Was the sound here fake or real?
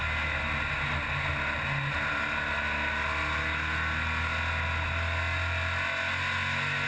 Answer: real